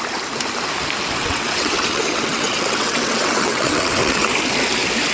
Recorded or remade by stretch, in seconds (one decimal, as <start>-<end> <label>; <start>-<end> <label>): 0.0-1.2 recorded; 1.2-4.3 remade; 4.3-5.1 recorded